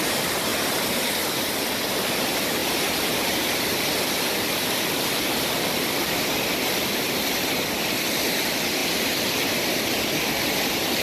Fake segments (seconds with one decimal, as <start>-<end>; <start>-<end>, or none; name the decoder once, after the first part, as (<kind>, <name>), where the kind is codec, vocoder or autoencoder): 2.6-7.0 (vocoder, BigVGAN v2); 8.8-10.1